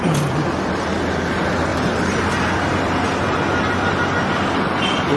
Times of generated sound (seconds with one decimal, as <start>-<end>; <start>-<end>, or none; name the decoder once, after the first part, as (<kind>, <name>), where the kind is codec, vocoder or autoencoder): 1.7-2.2 (vocoder, BigVGAN v2)